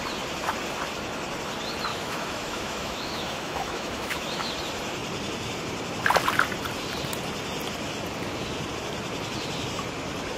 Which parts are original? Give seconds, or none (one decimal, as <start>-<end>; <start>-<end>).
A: 0.0-1.9; 4.5-10.4